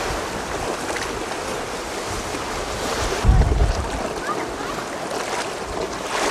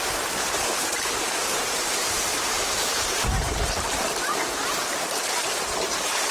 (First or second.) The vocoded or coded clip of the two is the second